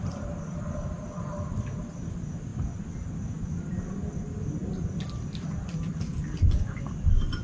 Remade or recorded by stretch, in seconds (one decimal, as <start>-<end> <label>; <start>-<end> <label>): 0.0-7.4 recorded